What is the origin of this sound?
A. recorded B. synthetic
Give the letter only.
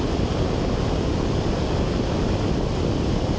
A